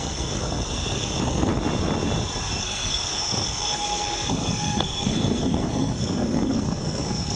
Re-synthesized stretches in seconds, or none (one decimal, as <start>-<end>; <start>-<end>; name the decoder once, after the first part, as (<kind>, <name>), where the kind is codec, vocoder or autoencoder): 0.0-1.5 (codec, SNAC); 2.6-7.4